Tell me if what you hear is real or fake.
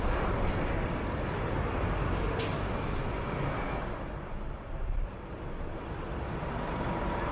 real